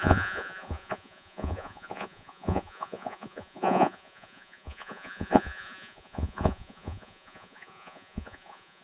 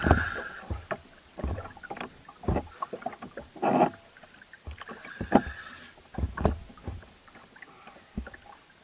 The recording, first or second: second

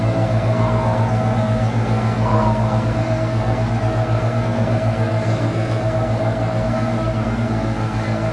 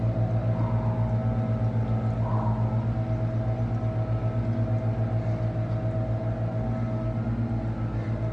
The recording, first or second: second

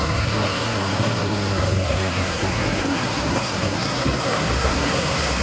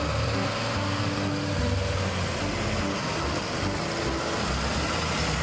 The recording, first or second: second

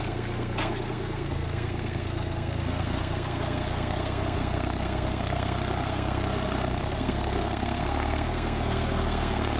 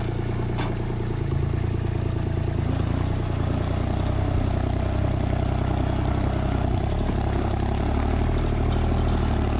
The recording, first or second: second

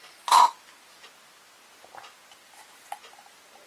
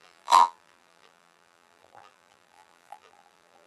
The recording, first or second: first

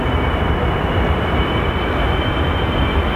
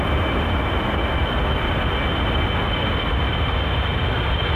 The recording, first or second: second